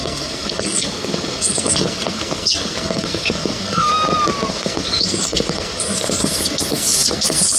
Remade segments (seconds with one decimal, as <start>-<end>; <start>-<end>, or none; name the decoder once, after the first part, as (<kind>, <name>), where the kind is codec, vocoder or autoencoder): 0.0-3.9 (codec, SNAC); 4.5-7.6